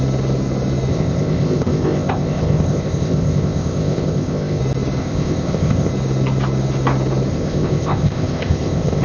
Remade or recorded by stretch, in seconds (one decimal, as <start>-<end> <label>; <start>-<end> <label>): 0.0-0.9 recorded; 0.9-4.6 remade; 4.6-5.0 recorded; 5.0-5.9 remade; 5.9-7.3 recorded; 7.3-9.0 remade